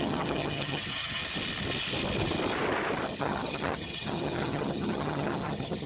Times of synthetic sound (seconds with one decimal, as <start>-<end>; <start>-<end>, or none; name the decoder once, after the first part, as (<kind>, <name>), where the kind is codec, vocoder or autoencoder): 0.0-1.2 (vocoder, HiFi-GAN); 3.2-5.9